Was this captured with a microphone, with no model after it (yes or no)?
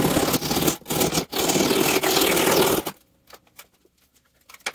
yes